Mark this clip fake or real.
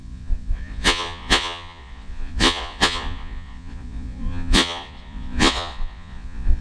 fake